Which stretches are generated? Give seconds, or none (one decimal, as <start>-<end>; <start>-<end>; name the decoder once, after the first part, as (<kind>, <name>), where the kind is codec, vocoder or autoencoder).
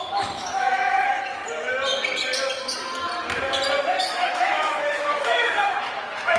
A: 0.0-1.4 (autoencoder, DAC-VAE); 4.0-6.4